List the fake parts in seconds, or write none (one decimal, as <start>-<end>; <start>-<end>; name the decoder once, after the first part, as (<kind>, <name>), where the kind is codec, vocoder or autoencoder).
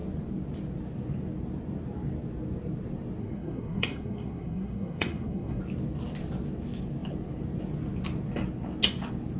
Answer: 3.2-5.6 (codec, SNAC)